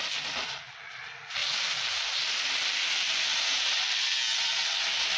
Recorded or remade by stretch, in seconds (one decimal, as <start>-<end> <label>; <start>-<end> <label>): 0.0-3.3 recorded; 3.3-3.8 remade; 3.8-5.2 recorded